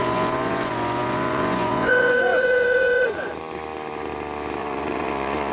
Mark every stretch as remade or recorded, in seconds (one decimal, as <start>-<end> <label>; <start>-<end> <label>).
0.0-3.3 remade; 3.3-4.6 recorded; 4.6-5.5 remade